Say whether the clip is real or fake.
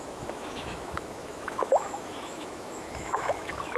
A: fake